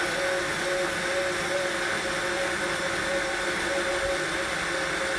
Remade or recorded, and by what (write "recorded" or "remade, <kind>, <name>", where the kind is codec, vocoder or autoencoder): recorded